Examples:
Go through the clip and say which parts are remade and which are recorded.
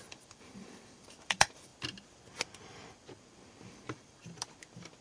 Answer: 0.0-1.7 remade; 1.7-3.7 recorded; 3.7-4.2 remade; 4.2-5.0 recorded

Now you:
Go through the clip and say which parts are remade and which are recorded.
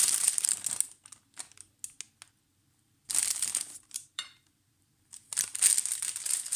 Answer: 0.0-0.5 remade; 0.5-3.5 recorded; 3.5-5.0 remade; 5.0-6.6 recorded